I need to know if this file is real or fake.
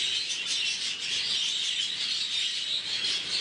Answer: real